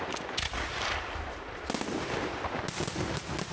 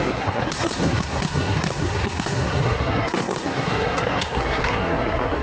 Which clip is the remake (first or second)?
second